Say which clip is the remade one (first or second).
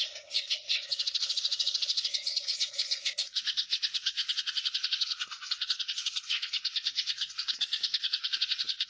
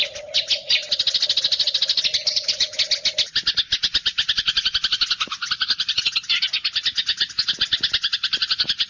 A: first